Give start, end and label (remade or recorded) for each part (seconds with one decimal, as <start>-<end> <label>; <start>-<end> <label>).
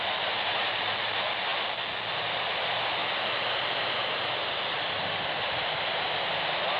0.0-6.8 recorded